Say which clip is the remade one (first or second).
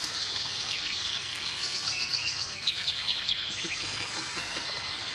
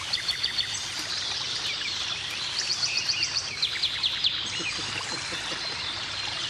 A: first